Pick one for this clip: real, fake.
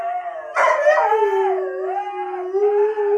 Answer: real